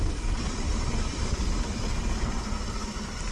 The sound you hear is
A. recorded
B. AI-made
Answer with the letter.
A